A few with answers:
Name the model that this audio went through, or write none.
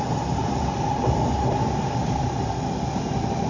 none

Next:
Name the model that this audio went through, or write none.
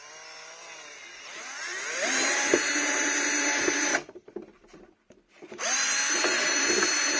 vocoder, BigVGAN v2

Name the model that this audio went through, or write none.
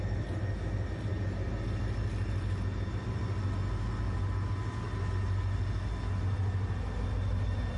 none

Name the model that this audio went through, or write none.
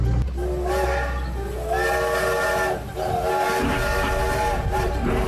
none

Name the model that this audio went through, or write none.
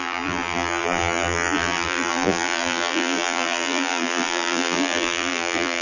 vocoder, BigVGAN v2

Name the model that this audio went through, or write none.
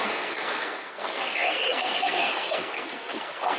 codec, SNAC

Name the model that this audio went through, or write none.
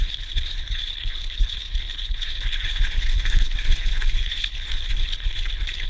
codec, HILCodec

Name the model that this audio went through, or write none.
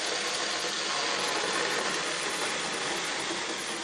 none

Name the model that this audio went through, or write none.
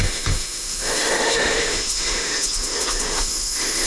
autoencoder, DAC-VAE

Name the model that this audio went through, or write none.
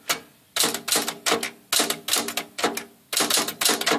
none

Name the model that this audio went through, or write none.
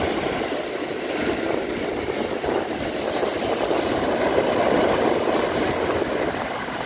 none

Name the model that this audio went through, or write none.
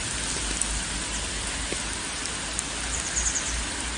vocoder, BigVGAN v2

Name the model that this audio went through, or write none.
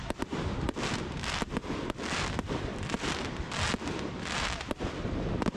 none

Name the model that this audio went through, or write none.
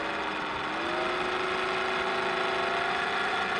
none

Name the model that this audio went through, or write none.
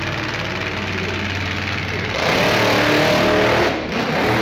none